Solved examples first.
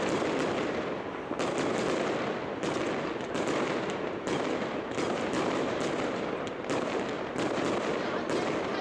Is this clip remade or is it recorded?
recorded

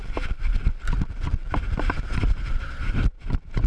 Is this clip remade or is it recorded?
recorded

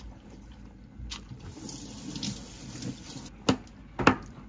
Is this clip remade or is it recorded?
recorded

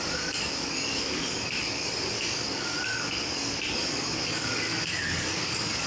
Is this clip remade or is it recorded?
remade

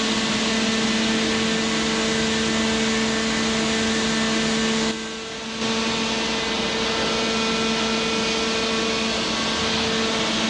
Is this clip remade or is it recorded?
recorded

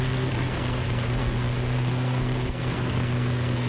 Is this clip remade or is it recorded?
remade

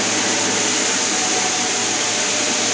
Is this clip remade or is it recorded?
recorded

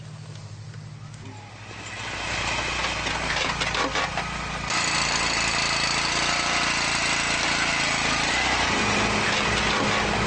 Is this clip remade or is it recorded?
recorded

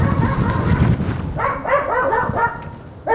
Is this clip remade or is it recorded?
recorded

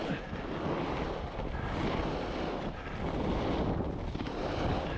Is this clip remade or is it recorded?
recorded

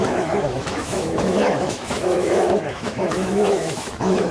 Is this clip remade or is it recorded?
remade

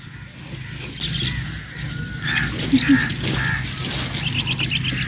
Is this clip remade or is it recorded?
recorded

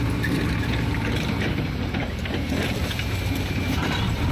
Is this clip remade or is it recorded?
remade